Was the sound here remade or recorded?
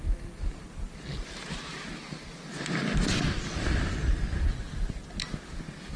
recorded